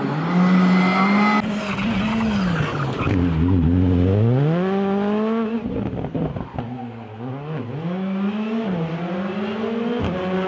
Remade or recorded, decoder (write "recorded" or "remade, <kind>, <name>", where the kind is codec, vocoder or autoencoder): recorded